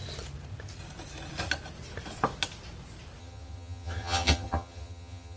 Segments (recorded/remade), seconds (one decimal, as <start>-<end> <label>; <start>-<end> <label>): 0.0-3.2 recorded; 3.2-5.4 remade